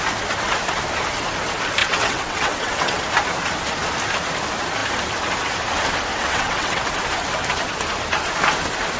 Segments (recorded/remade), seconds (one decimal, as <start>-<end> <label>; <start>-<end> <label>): 0.0-1.8 recorded; 1.8-3.0 remade; 3.0-6.1 recorded; 6.1-6.9 remade; 6.9-9.0 recorded